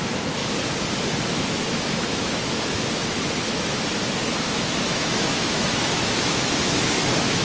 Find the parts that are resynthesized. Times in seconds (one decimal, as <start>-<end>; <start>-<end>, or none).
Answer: 0.0-0.4; 1.3-7.4